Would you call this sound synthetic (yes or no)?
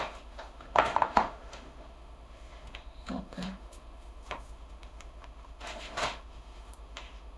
yes